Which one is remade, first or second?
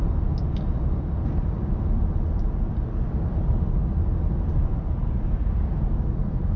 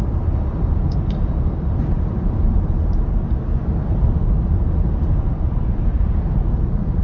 second